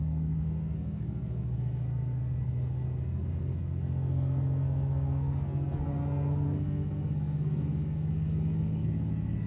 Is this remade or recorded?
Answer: remade